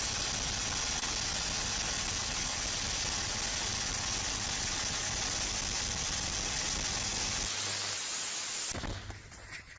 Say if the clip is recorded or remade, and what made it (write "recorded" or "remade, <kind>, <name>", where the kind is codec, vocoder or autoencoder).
recorded